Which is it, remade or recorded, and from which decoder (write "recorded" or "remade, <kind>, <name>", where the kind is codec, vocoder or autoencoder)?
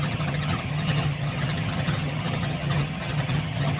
remade, vocoder, HiFi-GAN